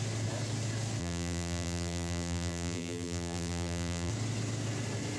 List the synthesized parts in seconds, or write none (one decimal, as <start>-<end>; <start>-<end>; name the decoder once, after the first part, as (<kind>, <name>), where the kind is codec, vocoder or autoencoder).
1.0-4.1 (vocoder, BigVGAN v2)

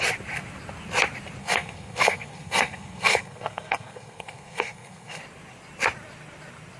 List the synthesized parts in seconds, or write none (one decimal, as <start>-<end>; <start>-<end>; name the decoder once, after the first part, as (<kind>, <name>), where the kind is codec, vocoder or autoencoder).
1.4-5.2 (codec, SNAC)

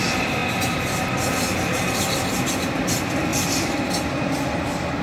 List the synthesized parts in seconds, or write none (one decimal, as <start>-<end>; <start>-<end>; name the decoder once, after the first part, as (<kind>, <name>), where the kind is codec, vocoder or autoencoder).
3.3-3.9 (vocoder, BigVGAN v2)

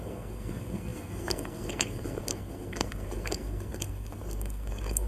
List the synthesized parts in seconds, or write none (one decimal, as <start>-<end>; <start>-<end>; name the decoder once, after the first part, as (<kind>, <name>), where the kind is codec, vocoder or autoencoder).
0.0-5.1 (codec, SNAC)

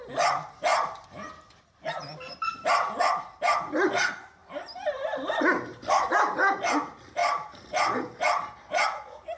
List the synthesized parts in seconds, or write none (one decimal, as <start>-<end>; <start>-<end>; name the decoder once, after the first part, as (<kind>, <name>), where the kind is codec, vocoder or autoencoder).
0.7-3.0 (vocoder, BigVGAN v2); 4.4-6.1; 7.2-8.6